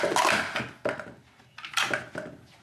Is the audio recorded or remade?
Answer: recorded